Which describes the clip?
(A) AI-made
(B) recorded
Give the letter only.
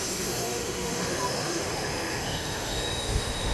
A